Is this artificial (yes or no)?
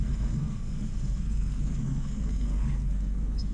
yes